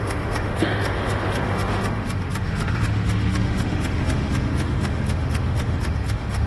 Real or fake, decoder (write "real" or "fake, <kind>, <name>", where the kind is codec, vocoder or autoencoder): fake, autoencoder, DAC-VAE